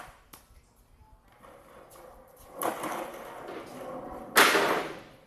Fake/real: real